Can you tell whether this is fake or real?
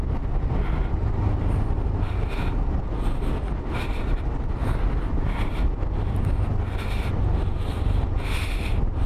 real